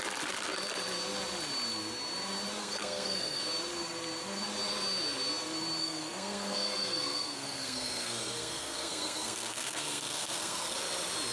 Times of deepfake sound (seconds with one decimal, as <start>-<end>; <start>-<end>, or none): 2.6-3.4; 5.8-10.7